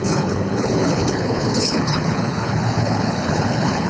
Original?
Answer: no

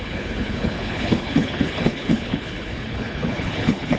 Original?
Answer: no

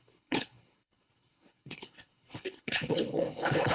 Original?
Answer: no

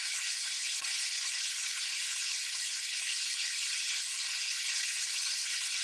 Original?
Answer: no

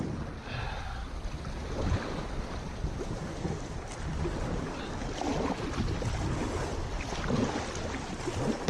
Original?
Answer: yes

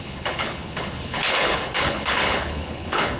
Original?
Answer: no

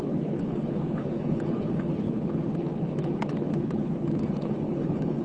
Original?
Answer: no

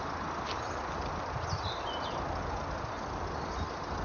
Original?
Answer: yes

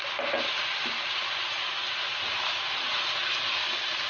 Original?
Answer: yes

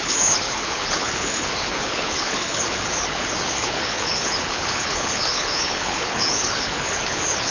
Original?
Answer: no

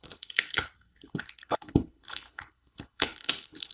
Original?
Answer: no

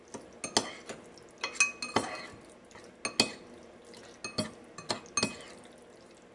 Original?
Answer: yes